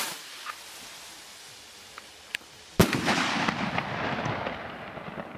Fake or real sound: real